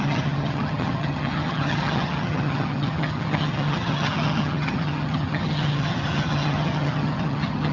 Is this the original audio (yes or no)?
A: no